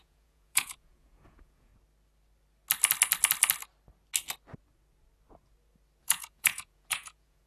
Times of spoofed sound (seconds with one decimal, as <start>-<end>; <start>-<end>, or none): 0.0-1.7; 6.0-7.5